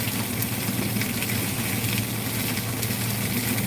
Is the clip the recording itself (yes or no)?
yes